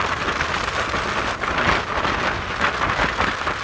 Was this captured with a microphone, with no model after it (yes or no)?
yes